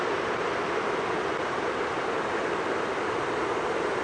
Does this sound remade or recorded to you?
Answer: remade